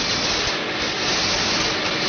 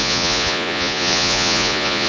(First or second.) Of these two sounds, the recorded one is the first